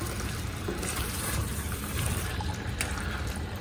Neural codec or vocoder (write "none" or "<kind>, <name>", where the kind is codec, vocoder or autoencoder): vocoder, BigVGAN v2